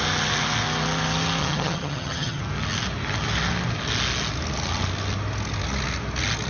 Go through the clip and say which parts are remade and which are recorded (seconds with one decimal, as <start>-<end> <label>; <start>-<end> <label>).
0.0-1.4 recorded; 1.4-2.4 remade; 2.4-6.5 recorded